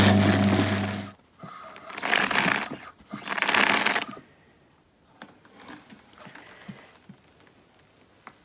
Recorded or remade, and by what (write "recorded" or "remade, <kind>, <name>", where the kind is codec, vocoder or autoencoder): recorded